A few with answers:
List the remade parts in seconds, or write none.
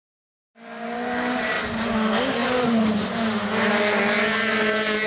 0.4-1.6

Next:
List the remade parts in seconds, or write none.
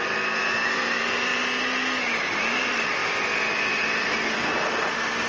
0.0-1.3; 2.3-3.0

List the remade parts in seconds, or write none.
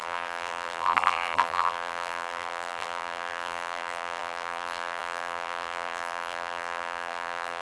0.0-7.6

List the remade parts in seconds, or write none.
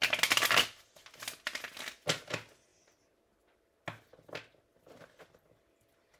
none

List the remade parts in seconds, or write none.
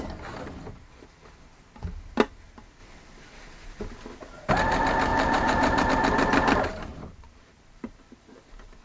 5.1-5.9; 6.9-8.2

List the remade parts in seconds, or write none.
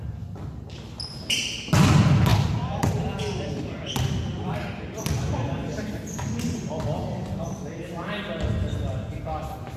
none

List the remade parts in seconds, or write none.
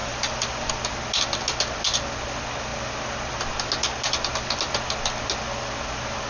0.0-0.7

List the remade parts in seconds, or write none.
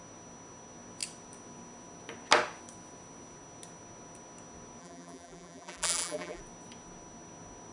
4.8-6.4